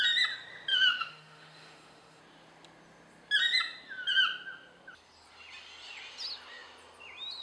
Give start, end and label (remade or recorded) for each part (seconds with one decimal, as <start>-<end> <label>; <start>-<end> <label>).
0.0-0.7 recorded; 0.7-2.2 remade; 2.2-7.4 recorded